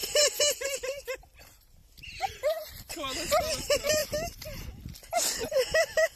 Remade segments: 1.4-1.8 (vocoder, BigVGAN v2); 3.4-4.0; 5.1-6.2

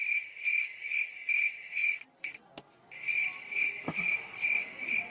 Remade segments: none

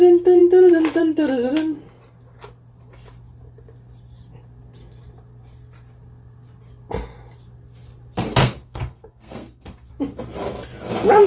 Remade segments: 8.4-9.9 (codec, SNAC)

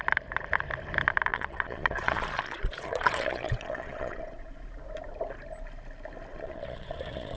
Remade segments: 1.3-4.6 (vocoder, Vocos); 6.3-7.4

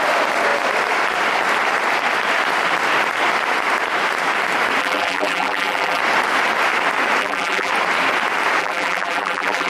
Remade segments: 4.8-6.0 (vocoder, BigVGAN v2); 7.2-7.7; 8.6-9.7

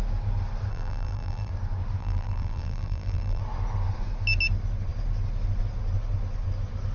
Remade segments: 0.7-1.5 (vocoder, BigVGAN v2); 2.0-3.4

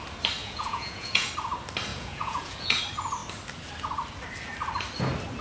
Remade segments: 0.4-1.3 (vocoder, Vocos); 1.9-2.8